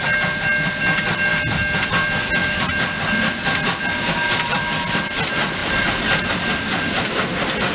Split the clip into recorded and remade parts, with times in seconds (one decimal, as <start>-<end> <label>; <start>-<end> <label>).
0.0-7.7 recorded